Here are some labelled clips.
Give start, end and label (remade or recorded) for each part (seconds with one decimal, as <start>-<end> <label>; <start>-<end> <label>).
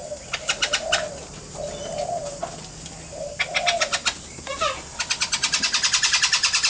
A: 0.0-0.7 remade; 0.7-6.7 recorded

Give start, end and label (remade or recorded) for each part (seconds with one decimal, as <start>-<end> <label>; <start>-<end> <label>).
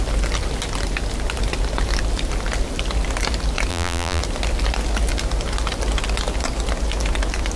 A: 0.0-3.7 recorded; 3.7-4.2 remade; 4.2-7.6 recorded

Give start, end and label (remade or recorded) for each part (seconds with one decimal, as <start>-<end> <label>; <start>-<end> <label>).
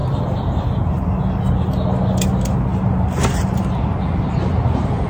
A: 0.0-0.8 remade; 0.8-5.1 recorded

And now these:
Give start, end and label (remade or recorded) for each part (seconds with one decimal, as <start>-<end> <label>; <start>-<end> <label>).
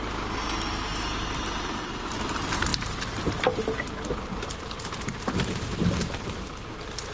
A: 0.0-0.9 recorded; 0.9-1.8 remade; 1.8-7.1 recorded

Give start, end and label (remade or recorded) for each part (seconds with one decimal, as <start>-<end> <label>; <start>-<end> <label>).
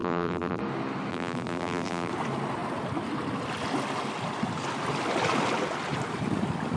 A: 0.0-0.6 remade; 0.6-1.1 recorded; 1.1-2.1 remade; 2.1-6.8 recorded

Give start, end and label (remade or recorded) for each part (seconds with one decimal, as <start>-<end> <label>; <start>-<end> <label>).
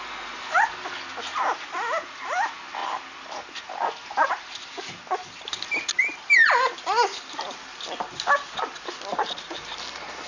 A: 0.0-10.3 recorded